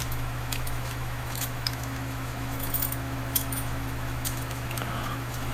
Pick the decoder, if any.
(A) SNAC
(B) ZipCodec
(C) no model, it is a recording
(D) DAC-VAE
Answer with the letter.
D